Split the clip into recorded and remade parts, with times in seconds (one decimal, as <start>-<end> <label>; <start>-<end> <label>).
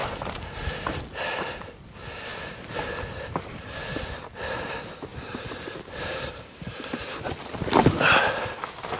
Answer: 0.0-1.0 remade; 1.0-2.3 recorded; 2.3-4.0 remade; 4.0-5.1 recorded; 5.1-7.4 remade; 7.4-9.0 recorded